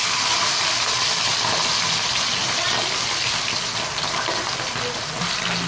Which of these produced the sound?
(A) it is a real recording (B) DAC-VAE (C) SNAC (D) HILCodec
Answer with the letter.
A